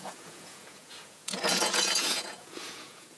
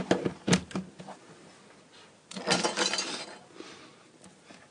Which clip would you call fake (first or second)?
first